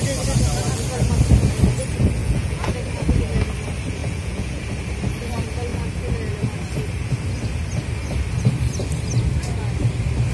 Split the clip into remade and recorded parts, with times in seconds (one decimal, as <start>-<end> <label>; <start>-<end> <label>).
0.0-2.2 recorded; 2.2-2.7 remade; 2.7-4.0 recorded; 4.0-4.6 remade; 4.6-10.3 recorded